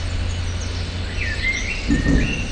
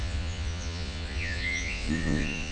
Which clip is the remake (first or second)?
second